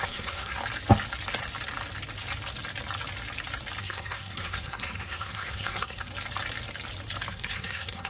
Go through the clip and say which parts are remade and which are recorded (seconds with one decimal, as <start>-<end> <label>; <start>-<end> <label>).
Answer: 0.0-0.6 remade; 0.6-3.8 recorded; 3.8-6.1 remade; 6.1-7.3 recorded; 7.3-8.1 remade